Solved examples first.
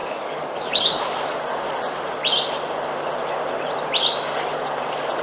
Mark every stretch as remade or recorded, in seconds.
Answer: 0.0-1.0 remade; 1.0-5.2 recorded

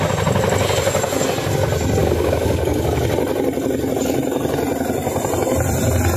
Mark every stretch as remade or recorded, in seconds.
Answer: 0.0-2.0 recorded; 2.0-3.0 remade; 3.0-6.2 recorded

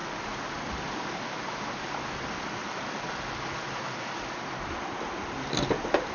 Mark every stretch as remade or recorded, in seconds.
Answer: 0.0-6.1 recorded

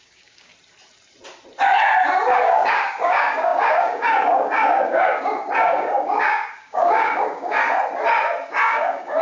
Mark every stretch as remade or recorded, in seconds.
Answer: 0.0-0.5 remade; 0.5-2.4 recorded; 2.4-7.6 remade; 7.6-8.5 recorded; 8.5-9.2 remade

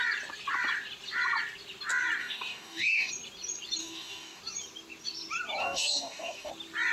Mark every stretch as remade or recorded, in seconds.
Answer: 0.0-2.2 recorded; 2.2-3.1 remade; 3.1-3.8 recorded; 3.8-4.4 remade; 4.4-5.6 recorded; 5.6-6.5 remade; 6.5-6.9 recorded